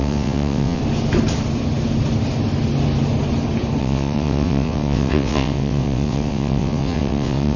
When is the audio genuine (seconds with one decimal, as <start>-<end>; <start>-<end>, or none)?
0.8-3.8